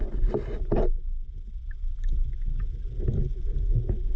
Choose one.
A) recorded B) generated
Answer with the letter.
A